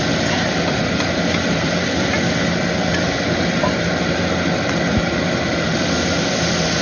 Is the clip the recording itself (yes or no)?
no